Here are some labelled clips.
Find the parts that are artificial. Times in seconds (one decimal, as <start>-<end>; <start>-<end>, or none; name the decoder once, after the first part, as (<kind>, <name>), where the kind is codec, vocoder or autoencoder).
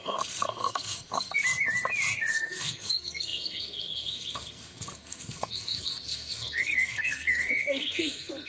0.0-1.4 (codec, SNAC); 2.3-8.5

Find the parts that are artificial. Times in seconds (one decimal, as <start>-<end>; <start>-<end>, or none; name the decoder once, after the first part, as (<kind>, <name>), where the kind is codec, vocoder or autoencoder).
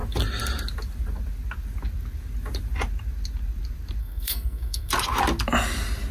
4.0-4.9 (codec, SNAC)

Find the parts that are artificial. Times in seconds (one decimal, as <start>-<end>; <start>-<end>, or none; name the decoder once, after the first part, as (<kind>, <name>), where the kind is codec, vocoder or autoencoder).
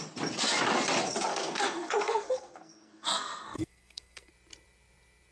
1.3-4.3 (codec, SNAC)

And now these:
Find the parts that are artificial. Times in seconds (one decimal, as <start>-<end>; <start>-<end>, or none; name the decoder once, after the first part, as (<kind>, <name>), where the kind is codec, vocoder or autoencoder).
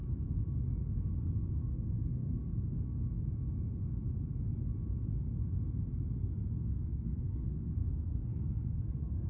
1.5-2.4 (codec, SNAC); 6.7-9.3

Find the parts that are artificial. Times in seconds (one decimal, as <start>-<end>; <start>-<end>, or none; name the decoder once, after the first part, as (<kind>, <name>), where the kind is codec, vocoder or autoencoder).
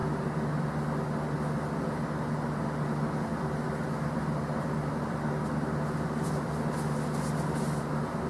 none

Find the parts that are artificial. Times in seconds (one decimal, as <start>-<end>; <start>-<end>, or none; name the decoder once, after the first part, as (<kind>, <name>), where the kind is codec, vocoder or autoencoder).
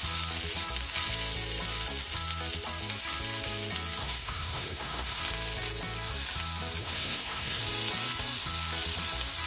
4.0-5.2 (codec, SNAC); 6.8-7.6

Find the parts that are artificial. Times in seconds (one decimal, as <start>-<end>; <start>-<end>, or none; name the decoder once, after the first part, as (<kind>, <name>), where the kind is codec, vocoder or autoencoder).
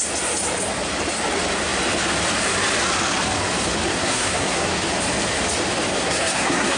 3.9-4.7 (codec, SNAC); 5.9-6.8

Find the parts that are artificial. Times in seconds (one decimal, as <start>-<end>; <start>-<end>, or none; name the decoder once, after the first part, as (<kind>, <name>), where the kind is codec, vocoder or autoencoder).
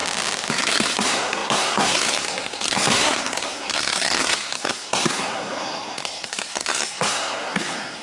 0.5-8.0 (codec, SNAC)